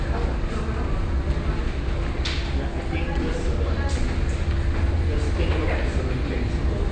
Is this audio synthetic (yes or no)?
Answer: no